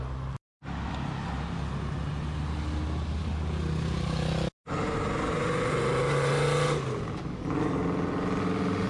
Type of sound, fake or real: real